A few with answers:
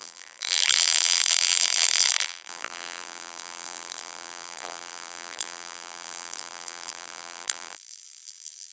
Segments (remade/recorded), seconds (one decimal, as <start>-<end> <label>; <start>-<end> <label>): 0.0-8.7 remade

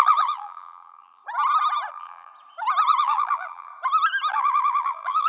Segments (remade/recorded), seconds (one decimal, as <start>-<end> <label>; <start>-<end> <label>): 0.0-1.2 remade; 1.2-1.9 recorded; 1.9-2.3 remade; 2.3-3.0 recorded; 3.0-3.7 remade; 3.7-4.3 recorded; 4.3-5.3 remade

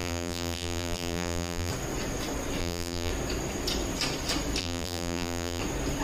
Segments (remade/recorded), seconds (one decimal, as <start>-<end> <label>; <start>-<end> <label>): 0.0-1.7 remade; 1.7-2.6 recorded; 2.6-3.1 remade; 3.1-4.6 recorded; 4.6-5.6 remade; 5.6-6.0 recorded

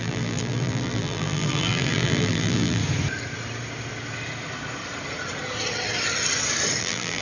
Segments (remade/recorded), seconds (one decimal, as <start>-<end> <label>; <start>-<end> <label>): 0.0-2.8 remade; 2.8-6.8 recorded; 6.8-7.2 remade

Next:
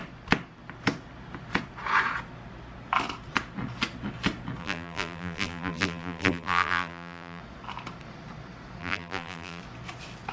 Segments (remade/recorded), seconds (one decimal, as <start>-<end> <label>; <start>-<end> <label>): 0.0-4.6 recorded; 4.6-7.4 remade; 7.4-8.8 recorded; 8.8-9.6 remade; 9.6-10.3 recorded

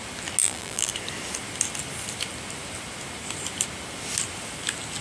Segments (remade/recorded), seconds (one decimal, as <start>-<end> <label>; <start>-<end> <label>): 0.0-0.4 recorded; 0.4-0.9 remade; 0.9-5.0 recorded

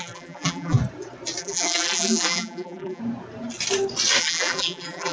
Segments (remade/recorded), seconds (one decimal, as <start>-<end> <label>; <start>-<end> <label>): 0.0-0.8 remade; 0.8-1.4 recorded; 1.4-3.0 remade; 3.0-4.2 recorded; 4.2-5.1 remade